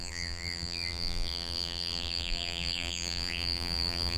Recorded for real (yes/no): no